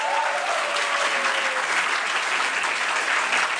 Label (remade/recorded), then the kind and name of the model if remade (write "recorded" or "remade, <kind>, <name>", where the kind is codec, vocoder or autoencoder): recorded